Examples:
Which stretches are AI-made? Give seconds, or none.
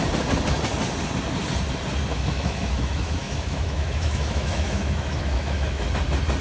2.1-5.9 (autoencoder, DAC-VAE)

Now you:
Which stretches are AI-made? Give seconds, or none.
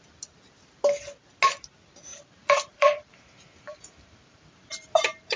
2.1-5.4 (vocoder, BigVGAN v2)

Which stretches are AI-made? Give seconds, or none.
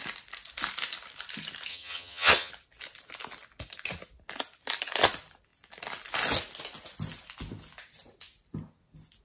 1.7-2.5 (vocoder, HiFi-GAN)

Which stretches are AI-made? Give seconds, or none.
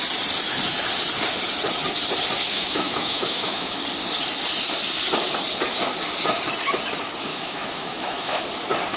2.5-3.8 (autoencoder, DAC-VAE); 7.3-8.4